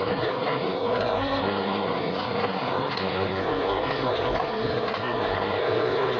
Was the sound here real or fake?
fake